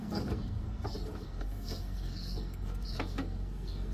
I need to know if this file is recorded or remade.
remade